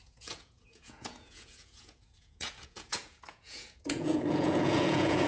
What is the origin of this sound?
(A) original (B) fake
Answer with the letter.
B